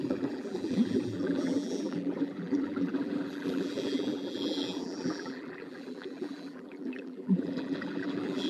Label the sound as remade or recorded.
remade